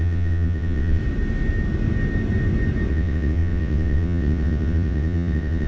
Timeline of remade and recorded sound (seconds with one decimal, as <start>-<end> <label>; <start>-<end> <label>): 0.0-1.0 remade; 1.0-2.9 recorded; 2.9-5.7 remade